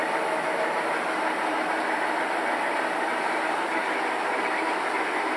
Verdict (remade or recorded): remade